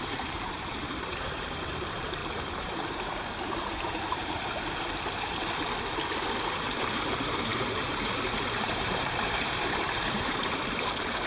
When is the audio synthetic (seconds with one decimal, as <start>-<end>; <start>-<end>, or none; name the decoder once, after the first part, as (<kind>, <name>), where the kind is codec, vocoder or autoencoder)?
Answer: 0.0-2.2 (vocoder, BigVGAN v2); 6.6-11.3